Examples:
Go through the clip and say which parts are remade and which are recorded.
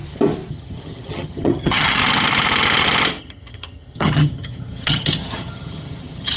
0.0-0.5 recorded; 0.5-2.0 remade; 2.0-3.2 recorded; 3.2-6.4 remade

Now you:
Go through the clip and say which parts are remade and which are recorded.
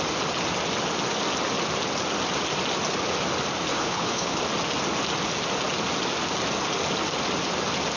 0.0-3.7 recorded; 3.7-4.4 remade; 4.4-8.0 recorded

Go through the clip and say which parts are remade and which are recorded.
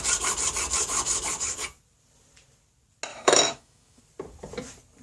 0.0-3.1 recorded; 3.1-4.0 remade; 4.0-5.0 recorded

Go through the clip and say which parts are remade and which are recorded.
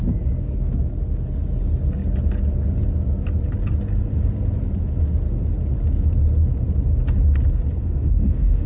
0.0-7.8 recorded; 7.8-8.7 remade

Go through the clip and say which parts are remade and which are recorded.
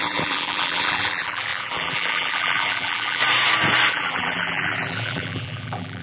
0.0-3.2 remade; 3.2-3.9 recorded; 3.9-6.0 remade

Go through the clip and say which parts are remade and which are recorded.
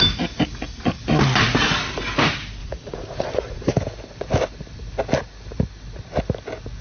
0.0-2.6 recorded; 2.6-3.8 remade; 3.8-6.8 recorded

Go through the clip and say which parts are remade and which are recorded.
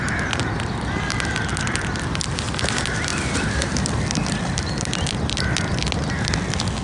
0.0-1.1 recorded; 1.1-1.7 remade; 1.7-3.1 recorded; 3.1-5.8 remade; 5.8-6.8 recorded